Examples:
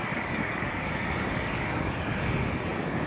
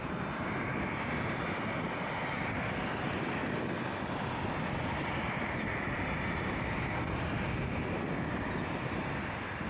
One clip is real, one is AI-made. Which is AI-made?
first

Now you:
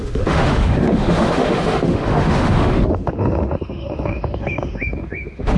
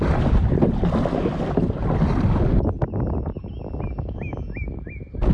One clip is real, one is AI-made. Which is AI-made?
first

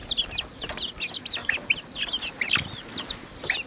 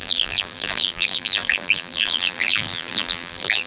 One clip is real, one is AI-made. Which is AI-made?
second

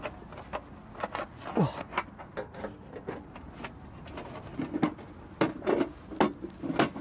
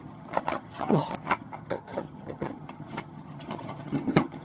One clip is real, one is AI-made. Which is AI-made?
second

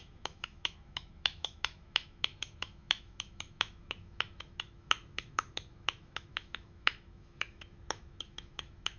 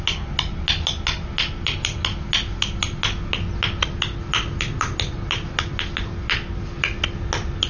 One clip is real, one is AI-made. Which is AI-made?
first